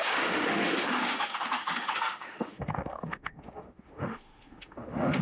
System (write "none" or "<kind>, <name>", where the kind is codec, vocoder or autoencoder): autoencoder, DAC-VAE